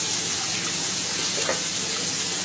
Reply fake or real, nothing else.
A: real